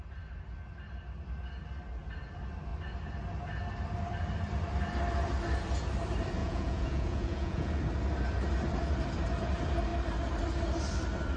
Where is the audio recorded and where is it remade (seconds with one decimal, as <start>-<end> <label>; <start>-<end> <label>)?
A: 0.0-6.4 recorded; 6.4-7.7 remade; 7.7-11.4 recorded